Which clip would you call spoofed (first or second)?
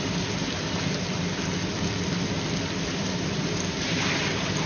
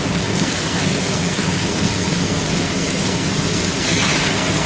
second